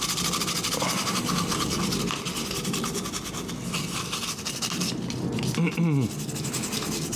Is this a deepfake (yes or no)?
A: no